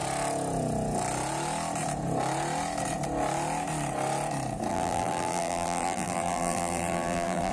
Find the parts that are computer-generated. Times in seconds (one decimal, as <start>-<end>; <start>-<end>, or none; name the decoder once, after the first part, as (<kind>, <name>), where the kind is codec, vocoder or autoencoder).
4.7-7.5 (vocoder, BigVGAN v2)